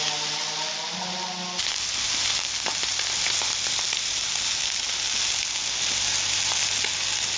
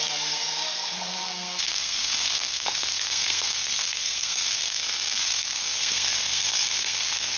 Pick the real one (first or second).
first